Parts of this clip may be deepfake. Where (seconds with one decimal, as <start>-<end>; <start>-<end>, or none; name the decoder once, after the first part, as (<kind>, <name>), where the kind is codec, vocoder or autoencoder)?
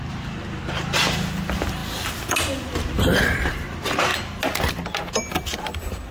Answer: none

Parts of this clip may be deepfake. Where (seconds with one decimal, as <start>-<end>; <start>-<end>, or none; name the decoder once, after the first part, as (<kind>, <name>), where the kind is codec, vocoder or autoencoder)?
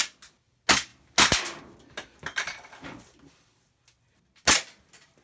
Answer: none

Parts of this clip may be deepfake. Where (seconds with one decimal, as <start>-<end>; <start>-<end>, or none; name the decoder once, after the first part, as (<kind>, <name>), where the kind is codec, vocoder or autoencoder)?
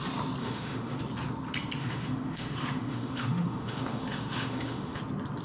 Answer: 0.4-1.0 (autoencoder, DAC-VAE); 1.8-5.0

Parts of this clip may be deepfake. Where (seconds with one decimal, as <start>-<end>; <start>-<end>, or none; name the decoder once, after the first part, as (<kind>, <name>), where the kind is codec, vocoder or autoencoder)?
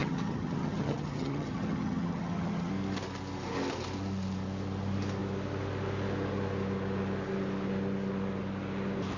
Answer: 0.0-2.7 (vocoder, HiFi-GAN)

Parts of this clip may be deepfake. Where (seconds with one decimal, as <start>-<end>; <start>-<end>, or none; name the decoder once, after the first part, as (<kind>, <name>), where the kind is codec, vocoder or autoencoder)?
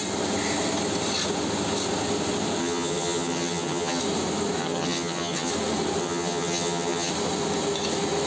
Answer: 2.6-4.0 (vocoder, HiFi-GAN); 4.6-5.5; 6.0-7.1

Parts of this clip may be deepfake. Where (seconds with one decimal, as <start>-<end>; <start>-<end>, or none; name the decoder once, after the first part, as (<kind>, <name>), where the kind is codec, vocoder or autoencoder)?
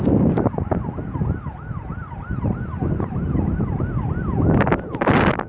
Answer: none